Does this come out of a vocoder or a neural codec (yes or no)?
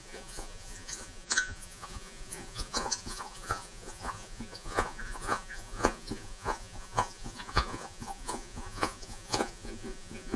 yes